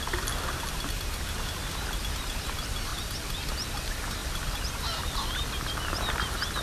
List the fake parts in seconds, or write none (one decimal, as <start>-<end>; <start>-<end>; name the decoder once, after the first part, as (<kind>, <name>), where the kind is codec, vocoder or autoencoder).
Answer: 2.9-3.5 (vocoder, BigVGAN v2); 4.2-5.3

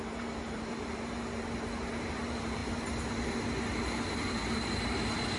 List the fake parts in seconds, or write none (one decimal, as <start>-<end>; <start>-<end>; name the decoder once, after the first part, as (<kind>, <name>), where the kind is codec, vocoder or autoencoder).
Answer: 0.0-2.6 (vocoder, BigVGAN v2); 4.1-5.4